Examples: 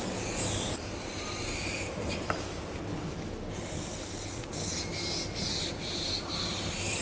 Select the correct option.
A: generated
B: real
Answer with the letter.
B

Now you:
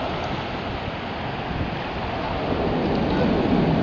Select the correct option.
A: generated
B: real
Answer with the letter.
B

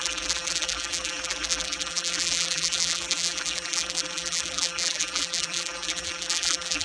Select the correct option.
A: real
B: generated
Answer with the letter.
B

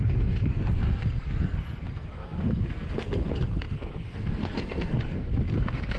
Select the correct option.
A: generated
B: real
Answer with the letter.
A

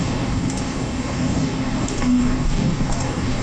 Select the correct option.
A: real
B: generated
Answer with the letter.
B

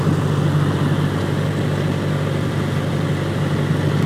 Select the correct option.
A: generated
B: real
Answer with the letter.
B